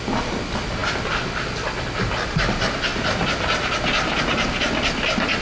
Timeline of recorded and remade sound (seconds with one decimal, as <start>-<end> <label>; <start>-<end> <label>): 0.0-5.4 recorded